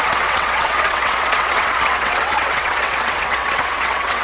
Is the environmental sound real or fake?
fake